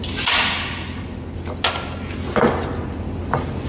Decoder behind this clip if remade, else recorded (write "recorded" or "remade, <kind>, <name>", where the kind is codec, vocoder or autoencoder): recorded